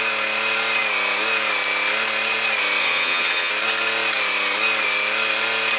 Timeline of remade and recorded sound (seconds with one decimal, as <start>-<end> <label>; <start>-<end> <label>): 0.0-2.8 recorded; 2.8-3.5 remade; 3.5-5.8 recorded